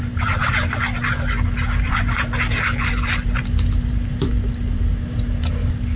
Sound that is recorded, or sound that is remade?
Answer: recorded